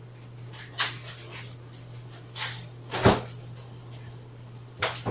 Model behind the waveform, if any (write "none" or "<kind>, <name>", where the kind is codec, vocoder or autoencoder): none